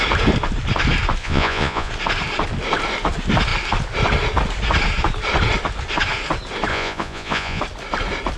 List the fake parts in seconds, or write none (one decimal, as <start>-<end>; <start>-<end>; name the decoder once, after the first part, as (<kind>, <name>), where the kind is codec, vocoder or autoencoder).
1.2-1.9 (vocoder, Vocos); 6.7-7.6